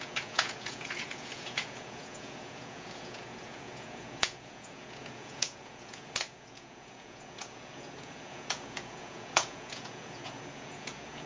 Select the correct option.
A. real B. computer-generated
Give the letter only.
B